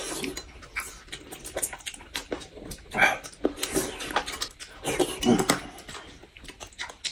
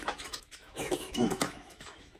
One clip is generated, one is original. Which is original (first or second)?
first